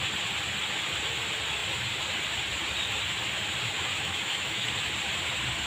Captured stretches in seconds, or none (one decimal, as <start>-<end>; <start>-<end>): 0.0-3.9; 4.7-5.7